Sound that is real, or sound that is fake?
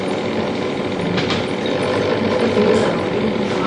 fake